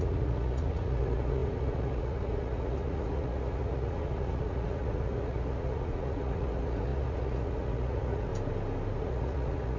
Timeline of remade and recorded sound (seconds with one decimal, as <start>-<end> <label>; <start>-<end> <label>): 0.0-8.3 remade; 8.3-9.0 recorded; 9.0-9.8 remade